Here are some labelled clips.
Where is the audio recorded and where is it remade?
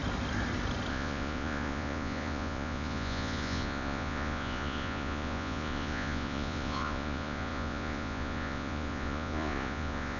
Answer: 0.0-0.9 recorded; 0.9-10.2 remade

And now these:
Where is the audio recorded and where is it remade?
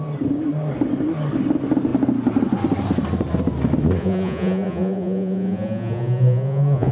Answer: 0.0-4.0 recorded; 4.0-6.9 remade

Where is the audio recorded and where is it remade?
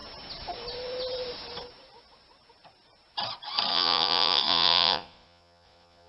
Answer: 0.0-3.7 recorded; 3.7-6.1 remade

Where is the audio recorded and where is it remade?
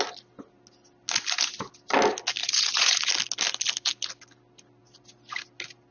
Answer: 0.0-2.4 recorded; 2.4-3.1 remade; 3.1-5.9 recorded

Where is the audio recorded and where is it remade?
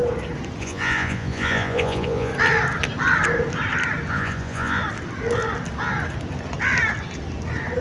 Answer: 0.0-0.6 recorded; 0.6-2.3 remade; 2.3-4.1 recorded; 4.1-4.8 remade; 4.8-7.8 recorded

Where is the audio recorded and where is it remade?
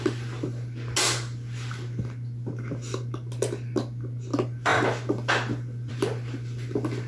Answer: 0.0-7.1 recorded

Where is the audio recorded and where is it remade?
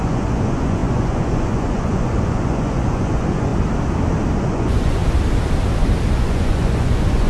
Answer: 0.0-3.5 remade; 3.5-4.4 recorded; 4.4-5.0 remade; 5.0-6.1 recorded; 6.1-7.3 remade